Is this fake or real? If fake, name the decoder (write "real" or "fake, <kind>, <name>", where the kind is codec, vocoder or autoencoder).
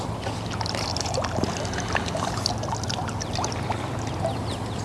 real